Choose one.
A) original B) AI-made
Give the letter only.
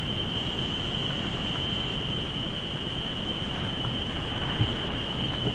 B